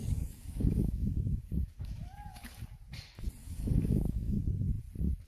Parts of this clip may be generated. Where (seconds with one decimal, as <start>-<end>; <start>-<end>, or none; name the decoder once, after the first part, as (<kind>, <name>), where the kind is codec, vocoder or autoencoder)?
0.0-2.6 (codec, DAC); 3.4-4.4